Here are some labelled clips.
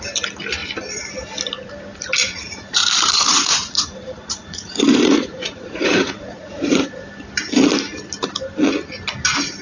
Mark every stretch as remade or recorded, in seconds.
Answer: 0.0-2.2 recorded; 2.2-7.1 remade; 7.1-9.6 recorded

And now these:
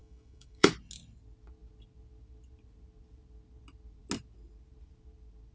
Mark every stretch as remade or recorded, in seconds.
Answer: 0.0-0.7 remade; 0.7-5.5 recorded

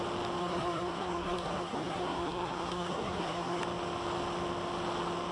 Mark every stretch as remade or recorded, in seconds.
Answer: 0.0-0.4 recorded; 0.4-3.6 remade; 3.6-5.3 recorded

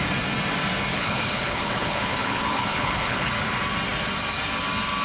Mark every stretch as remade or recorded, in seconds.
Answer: 0.0-0.9 recorded; 0.9-3.3 remade; 3.3-5.0 recorded